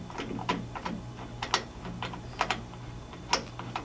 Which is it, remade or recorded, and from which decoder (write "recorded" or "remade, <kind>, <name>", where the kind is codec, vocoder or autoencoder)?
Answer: recorded